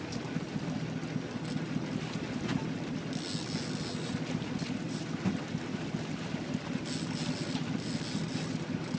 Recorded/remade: recorded